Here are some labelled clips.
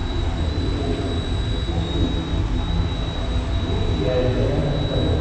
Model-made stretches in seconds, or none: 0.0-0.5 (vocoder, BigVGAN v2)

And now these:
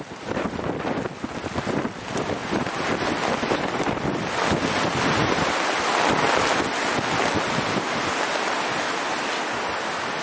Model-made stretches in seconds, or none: 2.4-6.4 (vocoder, BigVGAN v2)

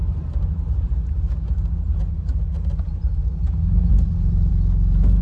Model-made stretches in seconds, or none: 0.5-1.1 (vocoder, BigVGAN v2); 2.1-3.5; 3.9-4.5

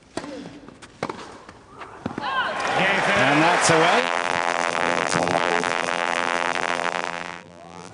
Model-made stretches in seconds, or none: 4.0-7.9 (vocoder, BigVGAN v2)

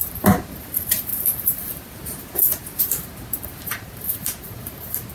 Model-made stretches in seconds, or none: 0.0-5.1 (vocoder, BigVGAN v2)